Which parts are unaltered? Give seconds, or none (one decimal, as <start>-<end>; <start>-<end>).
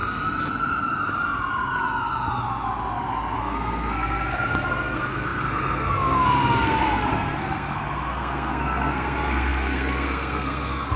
0.0-3.4